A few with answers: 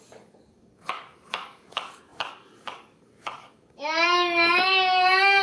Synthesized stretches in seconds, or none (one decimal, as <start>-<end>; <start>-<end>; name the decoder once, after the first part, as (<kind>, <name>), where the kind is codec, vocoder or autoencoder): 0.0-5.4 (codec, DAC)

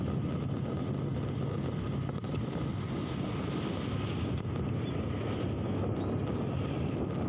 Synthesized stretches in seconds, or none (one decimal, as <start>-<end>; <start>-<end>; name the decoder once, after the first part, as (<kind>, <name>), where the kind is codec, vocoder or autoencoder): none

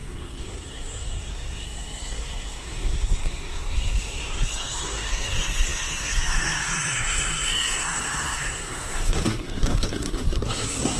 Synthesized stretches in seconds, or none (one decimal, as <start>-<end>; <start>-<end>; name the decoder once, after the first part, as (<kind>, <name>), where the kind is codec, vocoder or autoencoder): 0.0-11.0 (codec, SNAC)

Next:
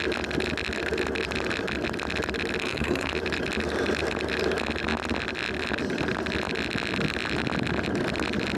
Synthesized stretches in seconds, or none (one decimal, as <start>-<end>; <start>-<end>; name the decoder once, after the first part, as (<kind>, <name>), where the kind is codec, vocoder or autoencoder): 2.6-3.1 (codec, SNAC)

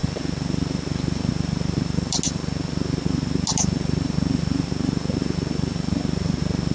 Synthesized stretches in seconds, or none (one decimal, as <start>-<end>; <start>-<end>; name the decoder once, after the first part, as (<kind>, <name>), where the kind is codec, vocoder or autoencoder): none

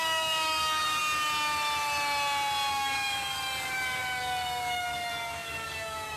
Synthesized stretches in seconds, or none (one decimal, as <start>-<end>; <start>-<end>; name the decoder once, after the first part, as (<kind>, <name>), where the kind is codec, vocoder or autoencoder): 0.0-1.0 (codec, DAC); 2.7-6.2